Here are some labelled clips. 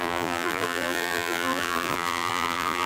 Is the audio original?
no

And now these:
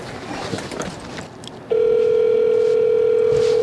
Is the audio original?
yes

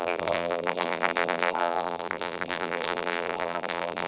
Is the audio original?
no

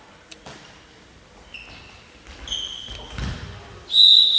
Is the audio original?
yes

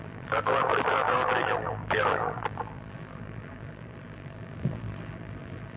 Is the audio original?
no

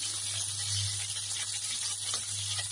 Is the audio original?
yes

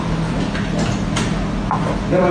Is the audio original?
yes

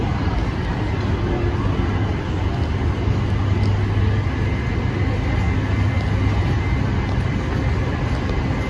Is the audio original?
yes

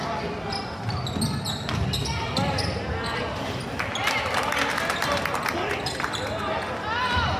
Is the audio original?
yes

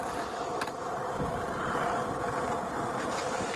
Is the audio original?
no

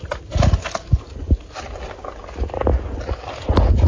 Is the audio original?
yes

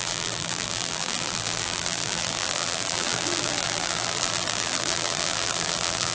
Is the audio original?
no